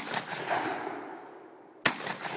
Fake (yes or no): no